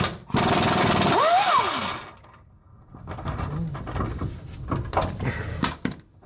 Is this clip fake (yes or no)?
no